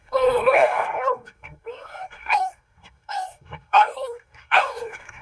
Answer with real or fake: fake